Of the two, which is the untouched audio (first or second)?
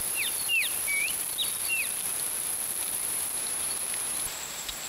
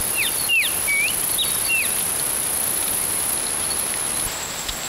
second